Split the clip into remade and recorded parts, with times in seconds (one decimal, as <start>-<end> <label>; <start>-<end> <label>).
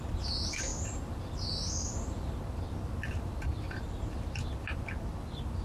0.0-5.6 recorded